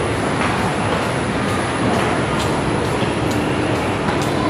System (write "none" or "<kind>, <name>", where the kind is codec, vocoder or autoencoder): none